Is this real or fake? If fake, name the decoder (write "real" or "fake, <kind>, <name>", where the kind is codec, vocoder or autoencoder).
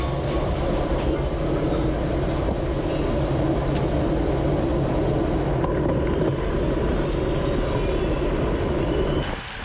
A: real